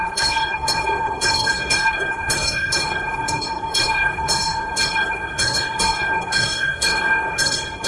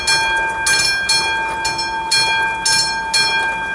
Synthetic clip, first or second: first